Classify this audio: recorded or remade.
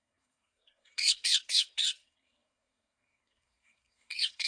remade